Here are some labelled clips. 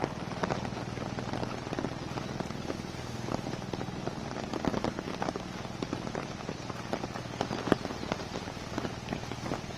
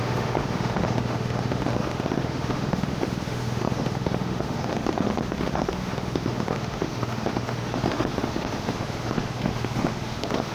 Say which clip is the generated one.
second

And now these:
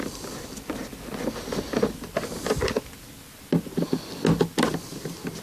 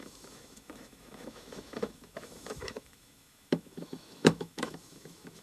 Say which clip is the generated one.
second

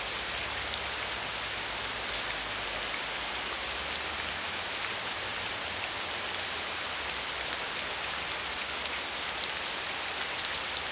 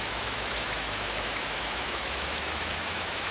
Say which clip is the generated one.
second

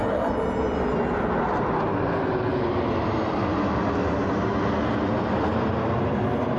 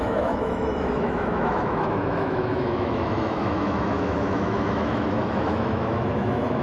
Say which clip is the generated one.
second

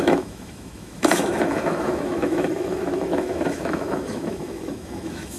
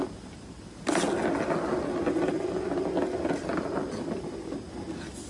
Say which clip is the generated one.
first